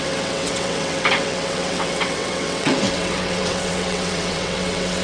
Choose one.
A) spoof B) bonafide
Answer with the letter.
A